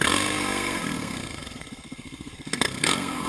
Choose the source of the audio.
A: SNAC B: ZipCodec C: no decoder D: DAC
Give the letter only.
A